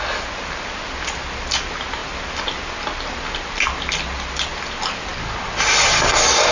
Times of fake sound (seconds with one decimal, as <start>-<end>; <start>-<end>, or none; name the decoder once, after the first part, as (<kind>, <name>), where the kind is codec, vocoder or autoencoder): none